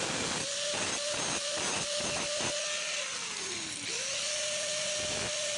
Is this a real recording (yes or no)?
yes